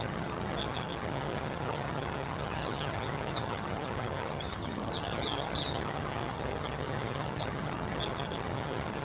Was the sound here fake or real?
fake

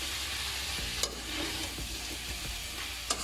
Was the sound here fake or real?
real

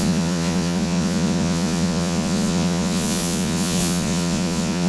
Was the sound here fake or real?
fake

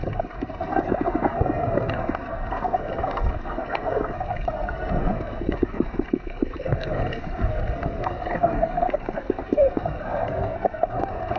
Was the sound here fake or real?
fake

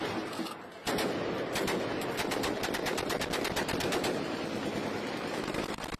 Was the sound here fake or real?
real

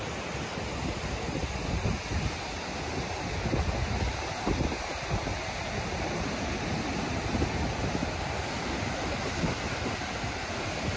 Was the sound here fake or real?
real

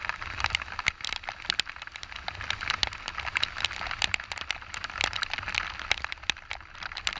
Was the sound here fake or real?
real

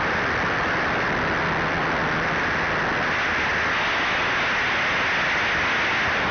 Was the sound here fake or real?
real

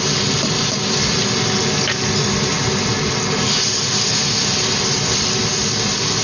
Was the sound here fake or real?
real